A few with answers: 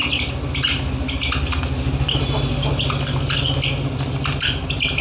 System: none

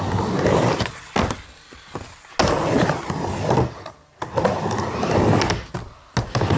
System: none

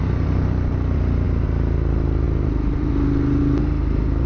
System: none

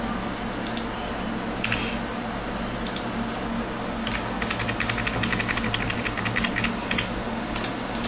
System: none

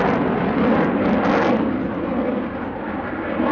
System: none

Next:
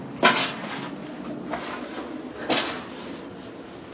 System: none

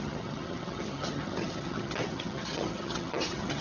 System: vocoder, HiFi-GAN